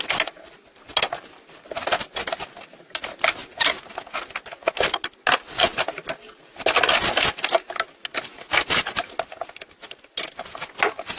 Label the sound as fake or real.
real